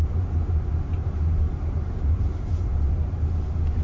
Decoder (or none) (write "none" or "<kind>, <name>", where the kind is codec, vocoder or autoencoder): vocoder, BigVGAN v2